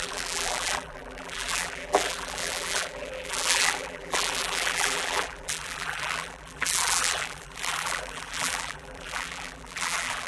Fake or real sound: fake